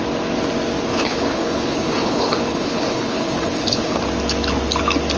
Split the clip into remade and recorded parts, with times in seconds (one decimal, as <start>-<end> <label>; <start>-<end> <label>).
0.0-0.9 recorded; 0.9-4.0 remade; 4.0-5.2 recorded